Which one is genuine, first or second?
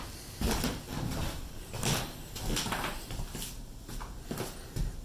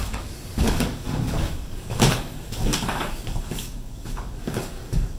first